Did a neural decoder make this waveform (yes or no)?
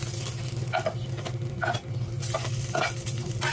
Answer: no